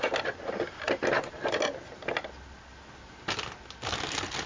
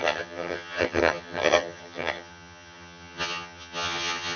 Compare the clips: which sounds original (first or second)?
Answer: first